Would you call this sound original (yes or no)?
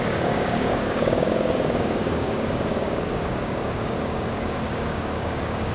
no